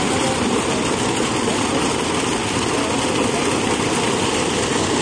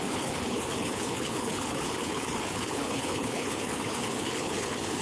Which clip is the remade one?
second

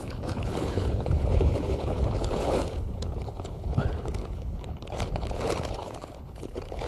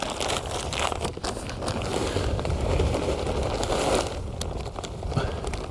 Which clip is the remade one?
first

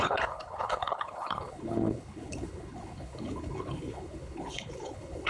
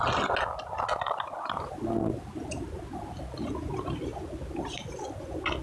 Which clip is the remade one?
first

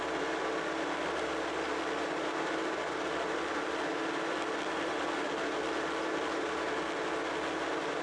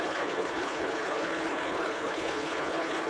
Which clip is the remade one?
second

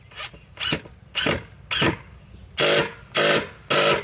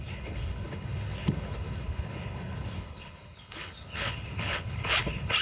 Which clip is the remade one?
second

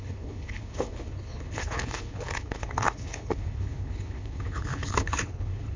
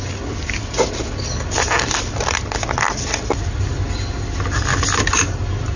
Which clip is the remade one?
first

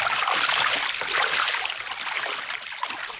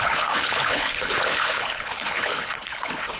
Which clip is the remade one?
second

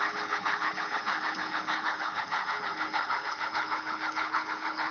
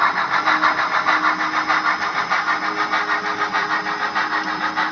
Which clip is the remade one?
first